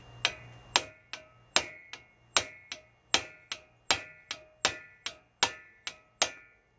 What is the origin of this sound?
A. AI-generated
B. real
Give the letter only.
B